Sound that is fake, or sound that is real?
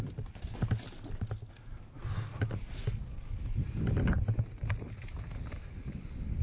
real